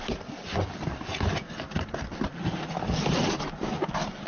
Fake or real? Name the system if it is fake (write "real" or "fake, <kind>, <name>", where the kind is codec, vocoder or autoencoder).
real